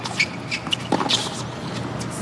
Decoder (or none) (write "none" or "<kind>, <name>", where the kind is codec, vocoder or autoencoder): none